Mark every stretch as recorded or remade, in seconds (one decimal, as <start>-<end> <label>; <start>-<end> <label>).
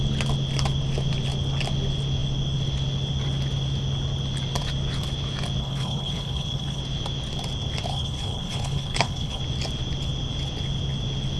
0.0-5.6 recorded; 5.6-6.8 remade; 6.8-7.9 recorded; 7.9-9.4 remade; 9.4-11.4 recorded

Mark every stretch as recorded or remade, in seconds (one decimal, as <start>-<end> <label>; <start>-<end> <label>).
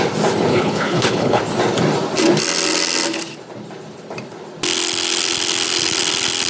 0.0-0.5 recorded; 0.5-1.4 remade; 1.4-6.5 recorded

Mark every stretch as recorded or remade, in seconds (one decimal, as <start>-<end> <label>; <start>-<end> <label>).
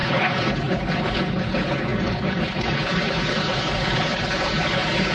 0.0-5.1 remade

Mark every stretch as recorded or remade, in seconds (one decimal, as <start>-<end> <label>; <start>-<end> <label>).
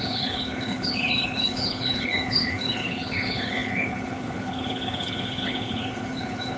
0.0-6.6 remade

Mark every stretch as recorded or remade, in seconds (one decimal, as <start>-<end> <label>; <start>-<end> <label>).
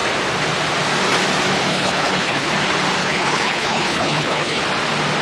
0.0-1.7 recorded; 1.7-2.5 remade; 2.5-3.0 recorded; 3.0-4.6 remade; 4.6-5.2 recorded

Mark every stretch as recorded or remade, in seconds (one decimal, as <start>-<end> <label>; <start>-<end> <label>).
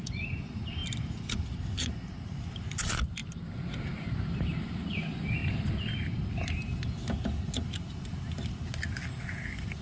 0.0-9.8 recorded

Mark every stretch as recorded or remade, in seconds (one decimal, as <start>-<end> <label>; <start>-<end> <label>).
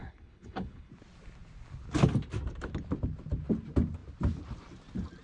0.0-0.9 remade; 0.9-5.2 recorded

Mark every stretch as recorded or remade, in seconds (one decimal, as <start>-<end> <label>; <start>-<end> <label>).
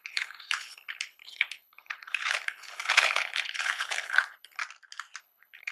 0.0-4.6 remade; 4.6-5.2 recorded; 5.2-5.7 remade